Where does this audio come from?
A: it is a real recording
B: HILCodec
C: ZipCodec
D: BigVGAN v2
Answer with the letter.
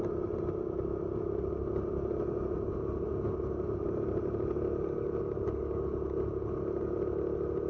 A